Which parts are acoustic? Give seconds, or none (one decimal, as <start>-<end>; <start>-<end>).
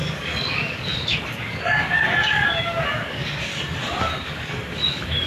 3.5-4.0